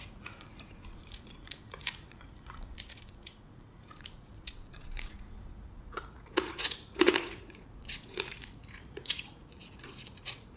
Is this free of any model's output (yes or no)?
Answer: no